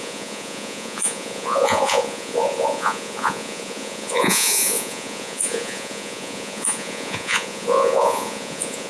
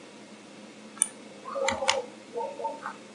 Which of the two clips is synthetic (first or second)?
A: first